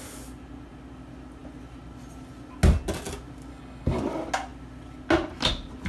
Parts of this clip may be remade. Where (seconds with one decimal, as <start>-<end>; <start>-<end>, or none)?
3.5-4.0